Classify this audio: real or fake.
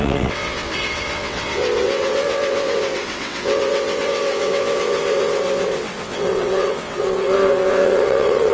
fake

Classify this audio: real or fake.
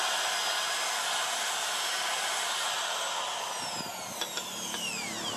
real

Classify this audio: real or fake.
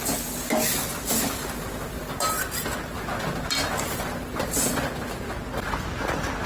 real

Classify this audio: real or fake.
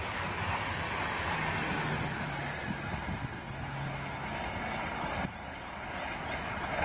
real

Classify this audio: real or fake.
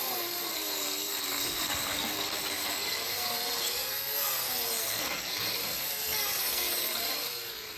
fake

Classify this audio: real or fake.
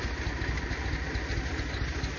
real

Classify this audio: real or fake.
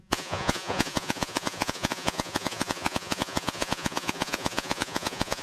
fake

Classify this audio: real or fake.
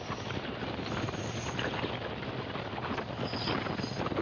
real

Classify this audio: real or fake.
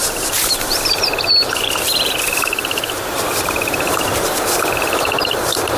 fake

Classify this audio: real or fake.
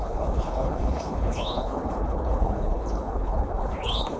fake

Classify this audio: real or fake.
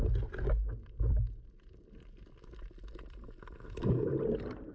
real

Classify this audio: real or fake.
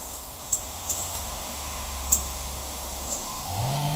fake